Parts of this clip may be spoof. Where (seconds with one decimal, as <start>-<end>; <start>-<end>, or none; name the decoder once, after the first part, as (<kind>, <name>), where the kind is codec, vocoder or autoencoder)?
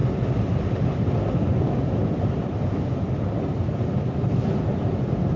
none